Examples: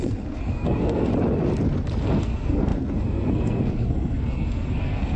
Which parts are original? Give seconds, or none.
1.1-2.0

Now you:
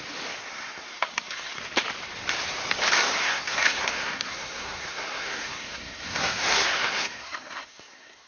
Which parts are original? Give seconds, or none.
0.0-0.5; 1.6-3.2

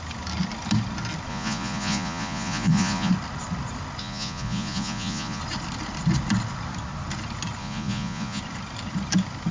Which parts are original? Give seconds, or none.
0.0-1.3; 3.1-4.0; 5.4-7.6; 8.4-9.5

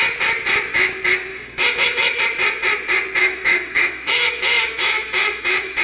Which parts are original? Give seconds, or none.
0.0-1.3; 2.2-3.2

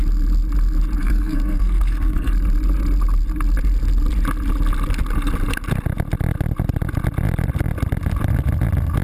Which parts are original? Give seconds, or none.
0.0-1.0; 2.3-9.0

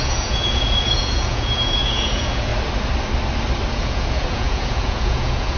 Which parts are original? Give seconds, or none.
2.5-3.7